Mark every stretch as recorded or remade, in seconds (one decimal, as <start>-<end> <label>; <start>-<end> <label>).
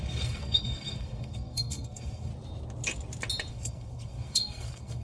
0.0-2.3 remade; 2.3-3.5 recorded; 3.5-5.0 remade